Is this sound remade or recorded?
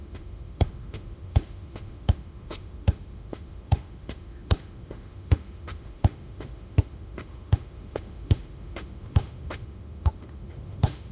remade